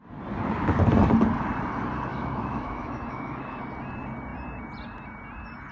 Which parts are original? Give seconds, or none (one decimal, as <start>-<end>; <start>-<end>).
0.0-2.1; 3.6-5.7